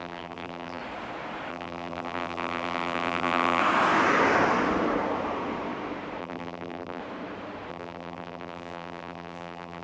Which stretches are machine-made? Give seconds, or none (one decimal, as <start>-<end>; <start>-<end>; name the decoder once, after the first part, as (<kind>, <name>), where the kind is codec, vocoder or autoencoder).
0.0-0.8 (vocoder, BigVGAN v2); 1.5-3.6; 6.2-7.0; 7.7-9.8